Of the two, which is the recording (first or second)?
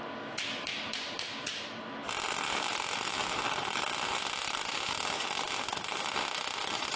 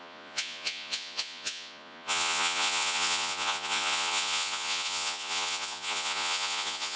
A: first